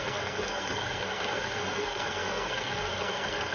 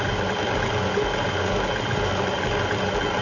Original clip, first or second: second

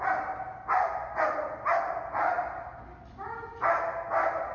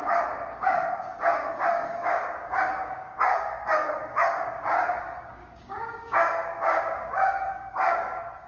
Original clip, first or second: first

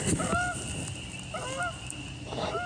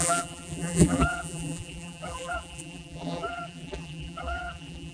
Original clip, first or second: first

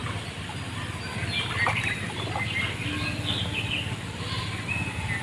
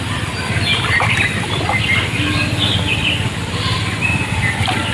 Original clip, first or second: first